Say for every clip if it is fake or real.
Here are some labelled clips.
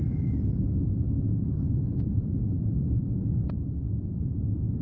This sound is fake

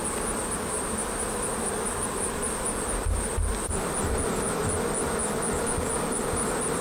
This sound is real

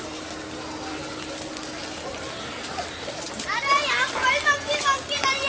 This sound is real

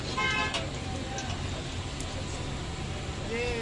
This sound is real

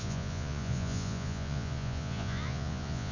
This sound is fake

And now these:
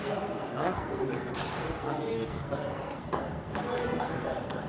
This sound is fake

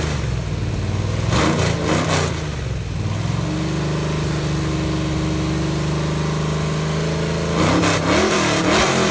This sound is real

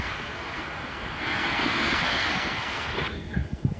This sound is fake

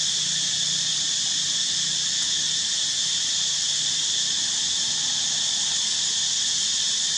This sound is real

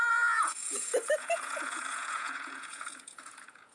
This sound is fake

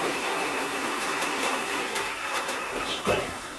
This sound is fake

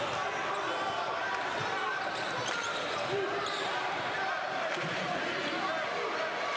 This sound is real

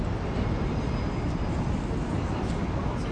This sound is real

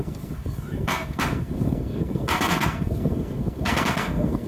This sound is fake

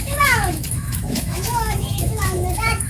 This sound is fake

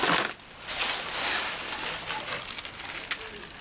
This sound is real